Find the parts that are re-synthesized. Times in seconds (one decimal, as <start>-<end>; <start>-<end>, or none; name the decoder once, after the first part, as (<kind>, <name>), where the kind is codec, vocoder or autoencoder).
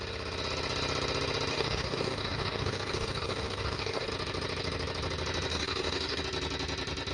1.5-4.1 (codec, DAC); 5.5-6.2